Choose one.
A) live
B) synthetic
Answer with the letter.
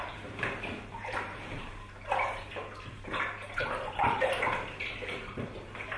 B